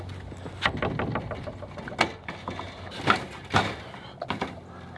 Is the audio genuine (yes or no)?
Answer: yes